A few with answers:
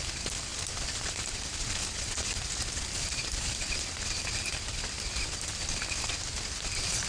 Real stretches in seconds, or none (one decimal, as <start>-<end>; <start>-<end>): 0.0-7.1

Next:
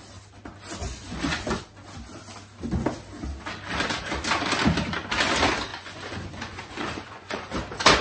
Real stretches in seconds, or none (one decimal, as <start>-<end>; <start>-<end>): 0.0-0.8; 1.6-5.7; 7.5-8.0

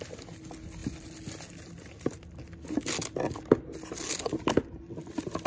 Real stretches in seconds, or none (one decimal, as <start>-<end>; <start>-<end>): 0.0-5.5

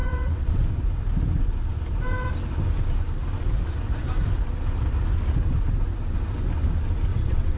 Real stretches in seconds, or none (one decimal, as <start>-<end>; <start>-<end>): 0.6-7.1

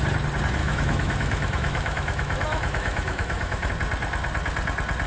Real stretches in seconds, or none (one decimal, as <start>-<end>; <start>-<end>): 0.0-0.6; 3.7-5.1

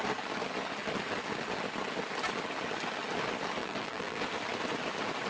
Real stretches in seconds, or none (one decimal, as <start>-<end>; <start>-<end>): 0.0-3.6; 4.2-5.3